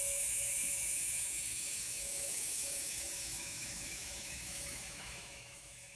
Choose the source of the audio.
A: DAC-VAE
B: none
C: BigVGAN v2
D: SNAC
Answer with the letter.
A